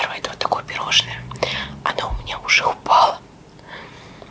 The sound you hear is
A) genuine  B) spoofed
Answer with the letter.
A